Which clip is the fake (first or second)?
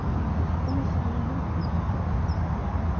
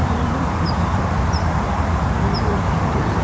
second